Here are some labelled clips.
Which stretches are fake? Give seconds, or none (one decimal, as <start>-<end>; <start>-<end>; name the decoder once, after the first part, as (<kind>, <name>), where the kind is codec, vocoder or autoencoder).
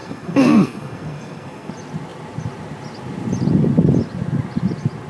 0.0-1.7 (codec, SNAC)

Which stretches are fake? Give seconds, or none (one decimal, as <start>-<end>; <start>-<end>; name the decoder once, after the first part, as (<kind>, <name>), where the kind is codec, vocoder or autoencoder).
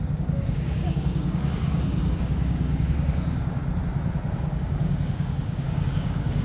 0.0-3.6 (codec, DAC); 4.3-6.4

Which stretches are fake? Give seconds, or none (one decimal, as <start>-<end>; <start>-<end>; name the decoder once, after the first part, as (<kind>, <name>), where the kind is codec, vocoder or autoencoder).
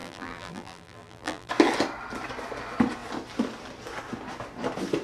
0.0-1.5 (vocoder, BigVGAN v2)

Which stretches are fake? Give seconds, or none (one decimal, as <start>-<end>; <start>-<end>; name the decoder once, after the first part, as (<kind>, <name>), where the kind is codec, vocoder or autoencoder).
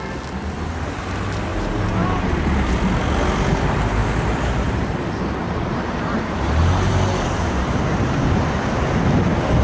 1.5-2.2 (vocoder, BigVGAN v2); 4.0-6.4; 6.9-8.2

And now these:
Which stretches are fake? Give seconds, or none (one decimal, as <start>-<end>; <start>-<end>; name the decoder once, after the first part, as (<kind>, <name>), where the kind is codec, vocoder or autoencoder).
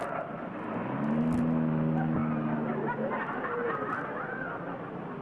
none